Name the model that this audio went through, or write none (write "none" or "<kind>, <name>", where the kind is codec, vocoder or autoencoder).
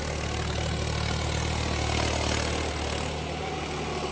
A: none